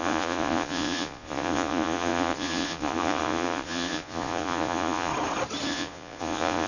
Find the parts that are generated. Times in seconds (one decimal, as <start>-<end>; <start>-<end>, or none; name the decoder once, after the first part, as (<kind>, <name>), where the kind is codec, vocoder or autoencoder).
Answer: 0.0-5.1 (vocoder, Vocos); 5.7-6.7